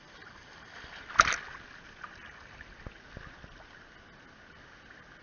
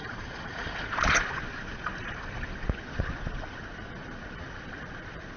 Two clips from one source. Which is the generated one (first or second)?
second